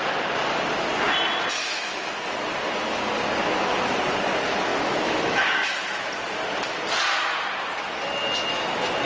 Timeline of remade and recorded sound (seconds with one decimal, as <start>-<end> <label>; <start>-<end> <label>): 0.0-1.6 recorded; 1.6-2.1 remade; 2.1-4.7 recorded; 4.7-6.1 remade; 6.1-9.1 recorded